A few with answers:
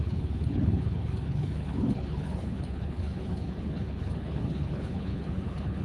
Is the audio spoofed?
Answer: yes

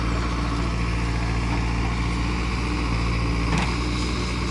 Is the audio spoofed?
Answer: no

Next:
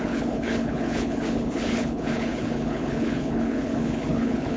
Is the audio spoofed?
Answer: yes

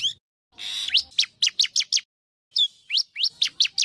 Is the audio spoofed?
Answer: no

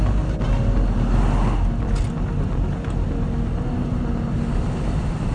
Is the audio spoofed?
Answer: no